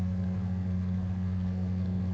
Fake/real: fake